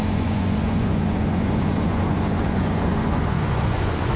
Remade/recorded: remade